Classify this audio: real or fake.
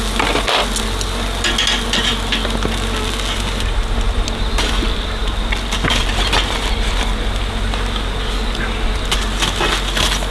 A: real